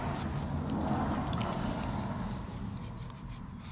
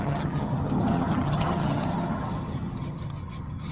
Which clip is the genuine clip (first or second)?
first